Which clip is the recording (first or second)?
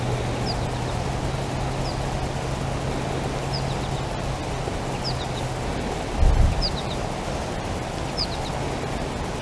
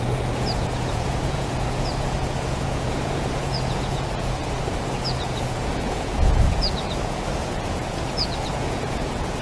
first